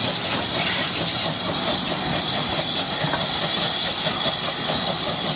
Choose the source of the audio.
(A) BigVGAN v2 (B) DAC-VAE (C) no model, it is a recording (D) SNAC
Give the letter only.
A